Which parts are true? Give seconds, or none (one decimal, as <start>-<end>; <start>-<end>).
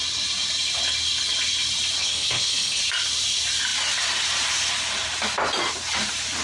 0.0-2.0; 2.8-6.4